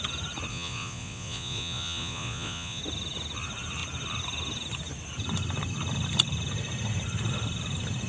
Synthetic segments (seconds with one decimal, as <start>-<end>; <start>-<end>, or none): 0.5-2.8